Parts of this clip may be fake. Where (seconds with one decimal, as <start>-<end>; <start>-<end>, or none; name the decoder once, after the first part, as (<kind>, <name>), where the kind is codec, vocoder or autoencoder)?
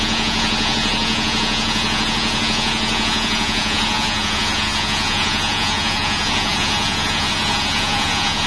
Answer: 0.0-8.5 (vocoder, Vocos)